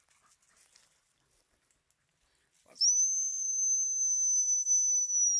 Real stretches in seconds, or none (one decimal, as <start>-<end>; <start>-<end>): 0.0-5.4